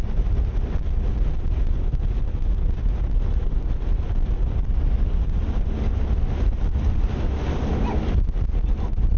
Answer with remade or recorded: recorded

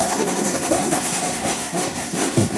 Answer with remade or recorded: remade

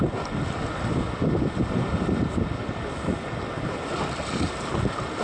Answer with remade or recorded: recorded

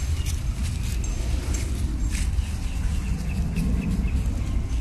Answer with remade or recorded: recorded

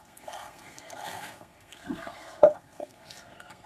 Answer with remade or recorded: remade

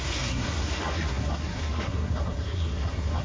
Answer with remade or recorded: remade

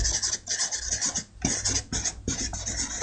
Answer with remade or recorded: recorded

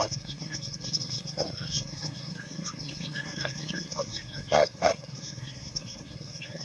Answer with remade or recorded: remade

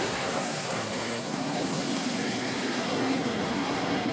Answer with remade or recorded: remade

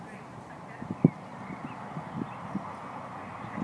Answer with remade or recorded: recorded